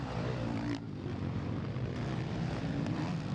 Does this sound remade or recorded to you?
remade